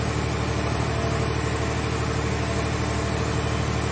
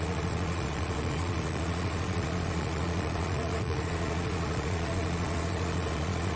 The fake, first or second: second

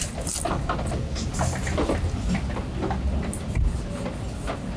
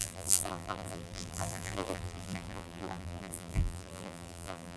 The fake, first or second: second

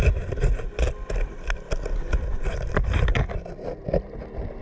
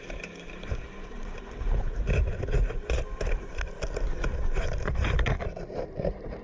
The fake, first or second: second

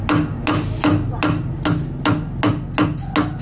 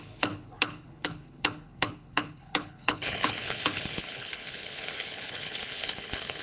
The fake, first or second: second